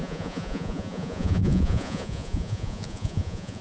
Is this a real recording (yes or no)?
no